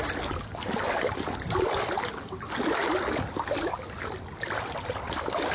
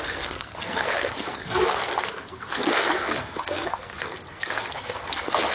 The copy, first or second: second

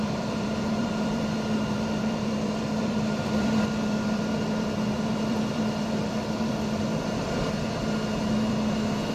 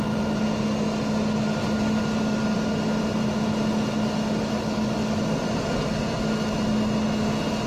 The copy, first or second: first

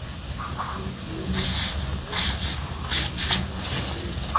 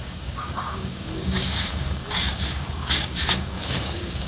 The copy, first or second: second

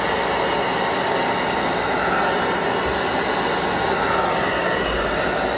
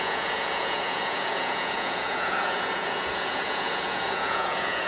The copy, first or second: second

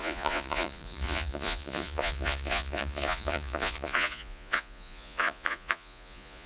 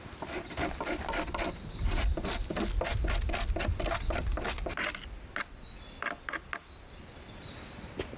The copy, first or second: first